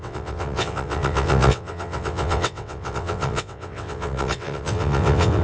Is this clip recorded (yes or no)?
no